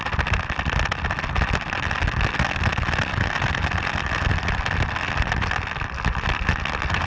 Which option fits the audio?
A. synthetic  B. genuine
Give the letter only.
B